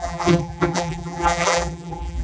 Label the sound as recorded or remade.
remade